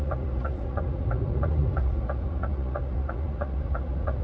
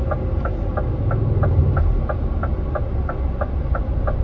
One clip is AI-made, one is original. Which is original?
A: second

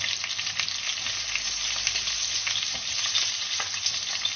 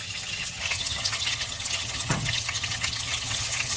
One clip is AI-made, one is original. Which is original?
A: first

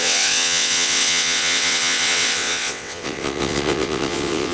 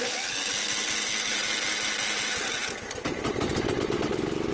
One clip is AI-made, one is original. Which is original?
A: second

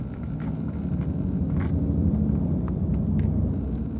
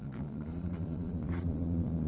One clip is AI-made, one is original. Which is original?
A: first